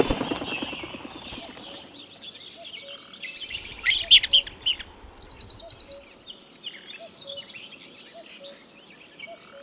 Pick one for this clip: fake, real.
real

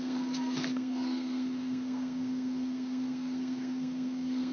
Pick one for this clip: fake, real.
fake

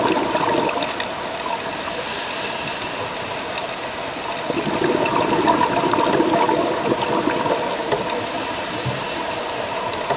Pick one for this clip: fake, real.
real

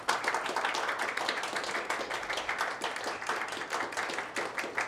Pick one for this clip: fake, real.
real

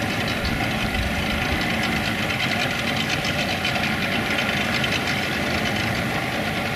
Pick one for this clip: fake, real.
real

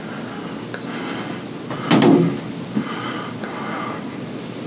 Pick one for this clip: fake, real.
real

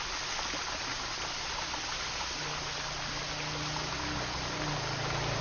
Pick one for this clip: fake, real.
real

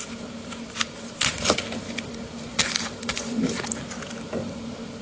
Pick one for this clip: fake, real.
real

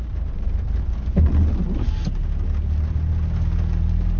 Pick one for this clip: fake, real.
real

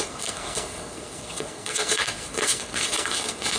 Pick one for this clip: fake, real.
fake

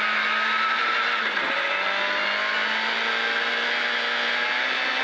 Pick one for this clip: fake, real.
real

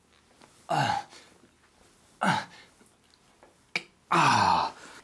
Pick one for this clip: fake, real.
real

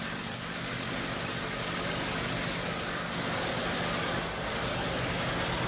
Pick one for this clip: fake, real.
real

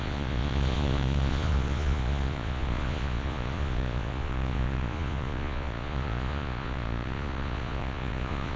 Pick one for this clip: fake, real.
fake